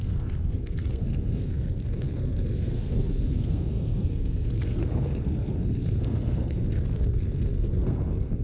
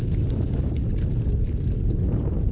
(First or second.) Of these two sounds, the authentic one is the second